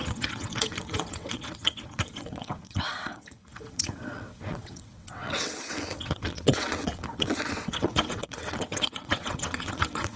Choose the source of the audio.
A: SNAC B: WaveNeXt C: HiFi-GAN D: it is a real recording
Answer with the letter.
B